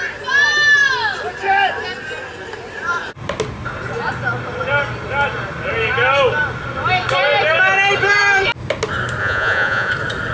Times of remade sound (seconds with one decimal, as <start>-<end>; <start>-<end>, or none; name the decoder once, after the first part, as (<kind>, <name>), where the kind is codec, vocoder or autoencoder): 9.2-9.9 (vocoder, Vocos)